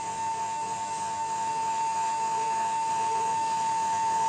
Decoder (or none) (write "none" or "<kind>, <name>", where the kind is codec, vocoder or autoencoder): autoencoder, DAC-VAE